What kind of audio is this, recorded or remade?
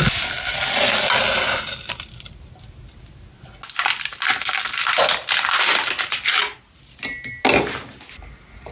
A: recorded